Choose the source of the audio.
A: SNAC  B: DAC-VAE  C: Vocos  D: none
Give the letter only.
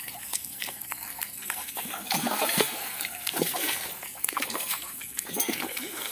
A